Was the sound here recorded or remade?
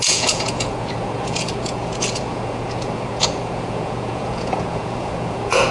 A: remade